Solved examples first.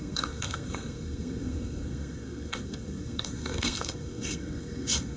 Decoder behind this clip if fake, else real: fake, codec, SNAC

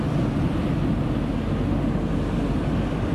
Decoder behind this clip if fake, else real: real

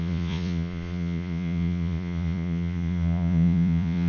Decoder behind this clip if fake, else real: fake, vocoder, Vocos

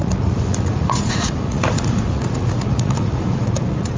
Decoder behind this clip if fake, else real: fake, vocoder, Vocos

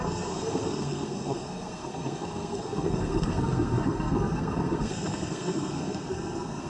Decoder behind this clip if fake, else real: fake, codec, SNAC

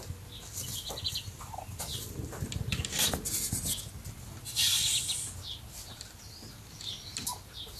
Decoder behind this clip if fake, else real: real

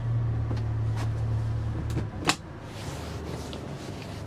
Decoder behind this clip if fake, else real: real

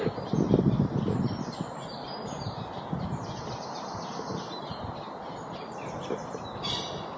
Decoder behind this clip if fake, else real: real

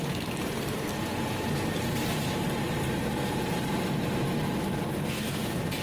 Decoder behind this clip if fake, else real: real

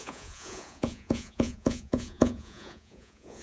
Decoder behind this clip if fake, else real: fake, vocoder, Vocos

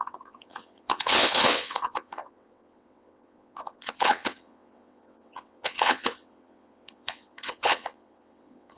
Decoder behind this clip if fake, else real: fake, vocoder, WaveNeXt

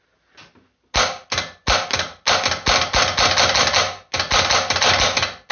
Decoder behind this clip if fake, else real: real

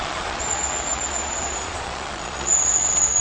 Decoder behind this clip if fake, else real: fake, vocoder, Vocos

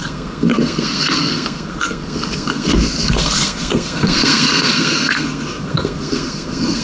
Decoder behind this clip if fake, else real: fake, codec, SNAC